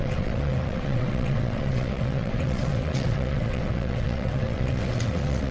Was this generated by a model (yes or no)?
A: yes